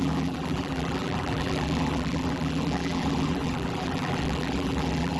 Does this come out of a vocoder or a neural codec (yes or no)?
yes